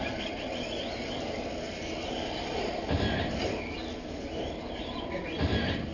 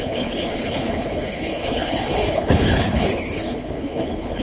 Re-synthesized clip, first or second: second